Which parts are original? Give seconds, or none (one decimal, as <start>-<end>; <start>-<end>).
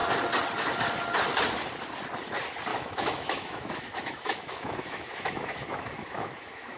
0.0-2.7